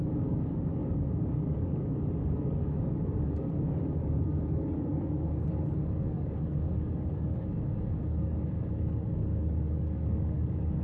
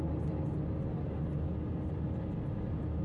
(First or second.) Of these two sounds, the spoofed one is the first